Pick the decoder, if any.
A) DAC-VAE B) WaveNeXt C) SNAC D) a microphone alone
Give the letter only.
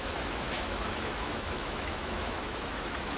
A